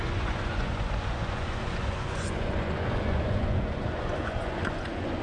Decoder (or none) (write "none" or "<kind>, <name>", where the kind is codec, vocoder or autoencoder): vocoder, Vocos